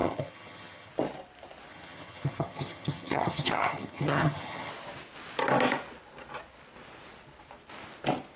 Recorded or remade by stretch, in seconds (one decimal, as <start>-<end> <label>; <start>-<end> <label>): 0.0-0.9 remade; 0.9-1.7 recorded; 1.7-4.7 remade; 4.7-8.4 recorded